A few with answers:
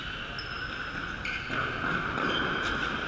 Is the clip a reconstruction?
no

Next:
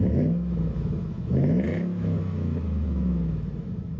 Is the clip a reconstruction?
yes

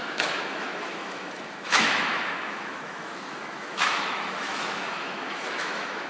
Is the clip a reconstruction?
yes